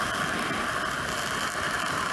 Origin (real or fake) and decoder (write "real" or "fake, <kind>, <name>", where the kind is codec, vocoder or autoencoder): real